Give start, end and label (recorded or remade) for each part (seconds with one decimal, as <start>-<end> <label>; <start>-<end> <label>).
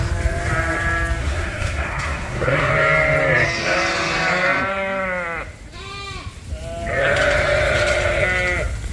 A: 0.0-1.2 recorded; 1.2-2.7 remade; 2.7-8.9 recorded